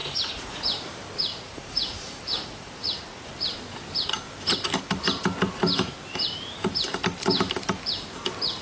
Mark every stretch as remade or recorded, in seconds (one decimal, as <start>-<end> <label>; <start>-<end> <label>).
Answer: 0.0-0.6 remade; 0.6-1.3 recorded; 1.3-3.3 remade; 3.3-8.6 recorded